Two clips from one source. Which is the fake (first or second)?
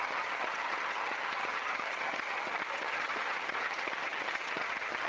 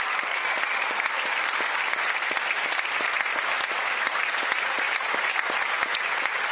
first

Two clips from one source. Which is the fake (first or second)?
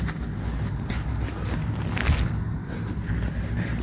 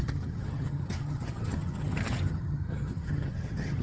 second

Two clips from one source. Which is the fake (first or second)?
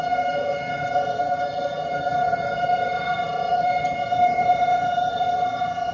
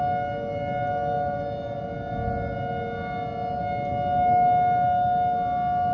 first